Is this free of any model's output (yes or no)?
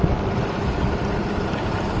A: yes